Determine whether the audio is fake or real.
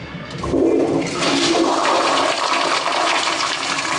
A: fake